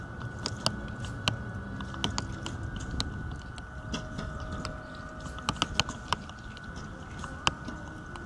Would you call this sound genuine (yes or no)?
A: yes